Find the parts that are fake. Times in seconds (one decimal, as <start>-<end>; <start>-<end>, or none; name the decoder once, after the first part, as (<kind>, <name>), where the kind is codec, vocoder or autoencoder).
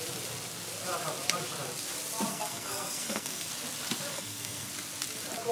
2.3-3.5 (codec, SNAC); 4.1-4.7